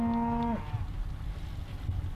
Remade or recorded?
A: recorded